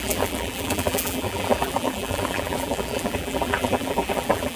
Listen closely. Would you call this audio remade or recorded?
remade